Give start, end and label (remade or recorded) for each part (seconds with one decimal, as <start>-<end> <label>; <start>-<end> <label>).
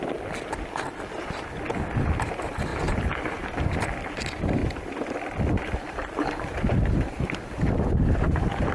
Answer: 0.0-4.6 recorded; 4.6-7.2 remade; 7.2-8.7 recorded